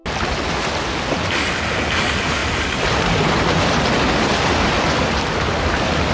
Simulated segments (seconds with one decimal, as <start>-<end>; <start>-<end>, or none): none